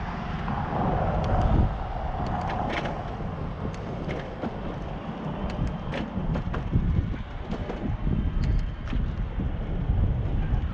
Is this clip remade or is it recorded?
recorded